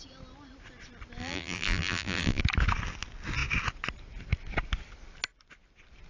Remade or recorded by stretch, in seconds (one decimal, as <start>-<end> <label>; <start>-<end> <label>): 0.0-1.2 recorded; 1.2-2.4 remade; 2.4-6.1 recorded